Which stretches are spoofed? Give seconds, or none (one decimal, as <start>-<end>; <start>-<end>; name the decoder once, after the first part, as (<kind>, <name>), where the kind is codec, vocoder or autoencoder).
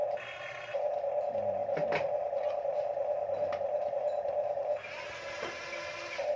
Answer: none